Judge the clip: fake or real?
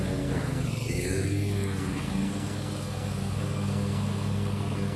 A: fake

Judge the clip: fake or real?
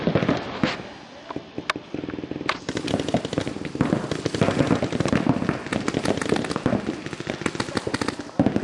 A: real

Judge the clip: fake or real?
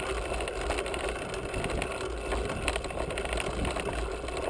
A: real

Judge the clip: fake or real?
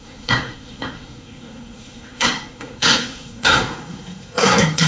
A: fake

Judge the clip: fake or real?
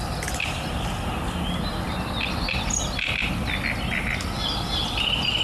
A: real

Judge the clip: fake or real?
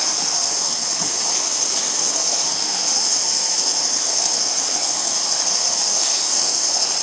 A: fake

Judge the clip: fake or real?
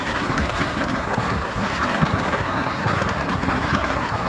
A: fake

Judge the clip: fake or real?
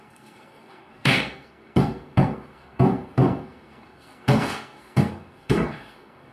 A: fake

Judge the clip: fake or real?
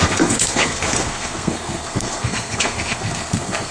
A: fake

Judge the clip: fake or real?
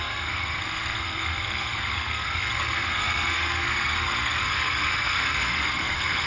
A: fake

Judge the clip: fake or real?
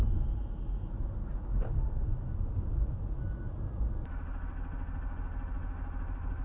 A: real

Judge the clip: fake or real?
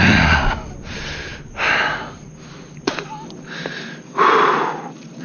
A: real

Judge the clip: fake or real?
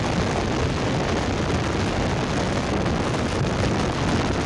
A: real